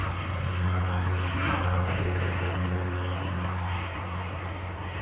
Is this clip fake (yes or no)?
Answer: yes